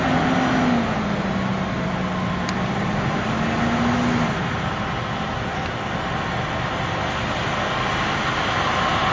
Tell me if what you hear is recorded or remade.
recorded